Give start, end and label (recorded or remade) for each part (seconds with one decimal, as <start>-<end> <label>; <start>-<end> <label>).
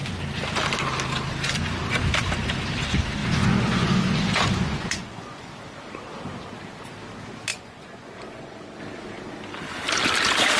0.0-3.2 recorded; 3.2-5.5 remade; 5.5-7.5 recorded; 7.5-8.8 remade; 8.8-10.6 recorded